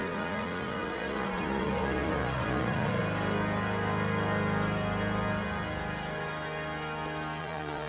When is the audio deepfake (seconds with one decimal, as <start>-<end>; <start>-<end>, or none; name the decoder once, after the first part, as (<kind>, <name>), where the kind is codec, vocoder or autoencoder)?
0.0-3.0 (vocoder, Vocos); 7.4-7.9